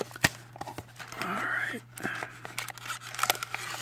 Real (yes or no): yes